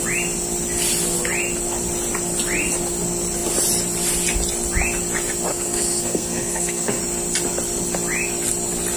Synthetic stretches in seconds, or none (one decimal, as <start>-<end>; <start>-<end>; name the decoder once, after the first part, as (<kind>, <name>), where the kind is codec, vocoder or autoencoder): 5.5-7.0 (codec, SNAC)